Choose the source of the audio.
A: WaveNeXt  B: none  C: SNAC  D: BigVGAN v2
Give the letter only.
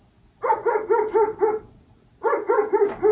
B